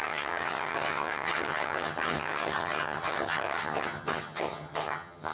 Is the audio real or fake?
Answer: fake